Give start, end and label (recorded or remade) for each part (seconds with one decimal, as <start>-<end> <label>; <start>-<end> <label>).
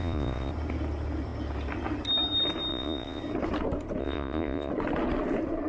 0.0-0.5 remade; 0.5-2.7 recorded; 2.7-3.2 remade; 3.2-4.0 recorded; 4.0-4.7 remade; 4.7-5.7 recorded